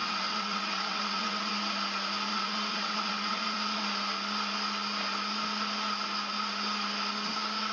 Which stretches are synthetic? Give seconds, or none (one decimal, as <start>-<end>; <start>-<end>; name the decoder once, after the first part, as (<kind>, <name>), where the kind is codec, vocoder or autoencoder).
0.0-1.5 (vocoder, WaveNeXt); 2.3-3.8